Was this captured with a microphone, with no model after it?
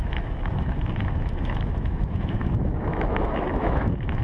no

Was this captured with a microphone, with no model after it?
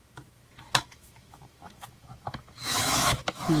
no